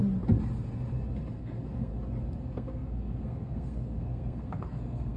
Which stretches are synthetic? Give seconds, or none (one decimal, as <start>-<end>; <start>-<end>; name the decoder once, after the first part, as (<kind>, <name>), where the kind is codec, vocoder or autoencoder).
1.2-1.9 (codec, SNAC); 2.4-5.2